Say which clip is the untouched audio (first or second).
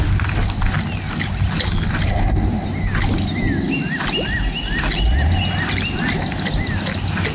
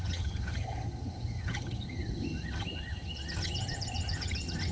first